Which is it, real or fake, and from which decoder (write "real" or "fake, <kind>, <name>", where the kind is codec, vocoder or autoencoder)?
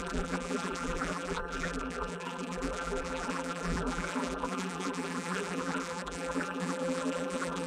fake, vocoder, BigVGAN v2